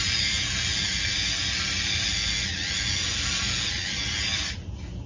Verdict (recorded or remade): recorded